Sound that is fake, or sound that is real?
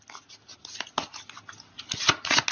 real